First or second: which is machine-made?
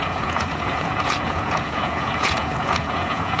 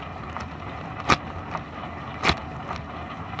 first